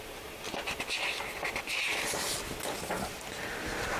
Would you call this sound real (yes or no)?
yes